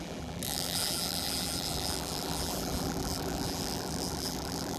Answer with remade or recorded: remade